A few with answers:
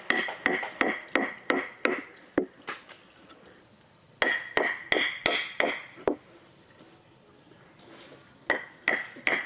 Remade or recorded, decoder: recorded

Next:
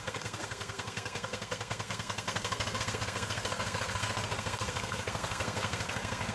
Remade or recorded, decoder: remade, codec, SNAC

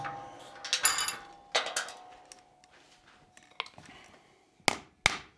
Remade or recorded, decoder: recorded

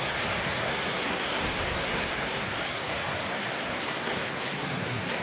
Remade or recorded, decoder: remade, codec, SNAC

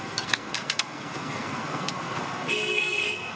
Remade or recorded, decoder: remade, codec, SNAC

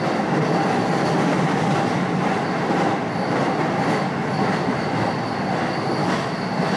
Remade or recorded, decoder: recorded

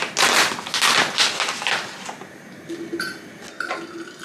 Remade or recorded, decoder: recorded